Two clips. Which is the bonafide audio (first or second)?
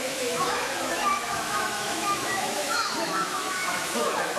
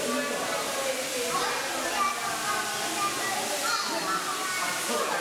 second